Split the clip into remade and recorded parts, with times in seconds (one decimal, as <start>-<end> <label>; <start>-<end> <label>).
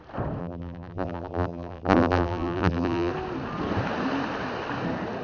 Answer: 0.0-0.4 recorded; 0.4-3.1 remade; 3.1-5.2 recorded